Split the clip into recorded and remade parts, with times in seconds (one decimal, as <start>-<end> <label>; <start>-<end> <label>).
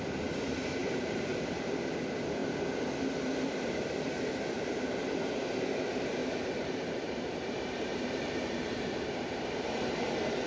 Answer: 0.0-0.8 recorded; 0.8-2.0 remade; 2.0-6.2 recorded; 6.2-9.9 remade; 9.9-10.5 recorded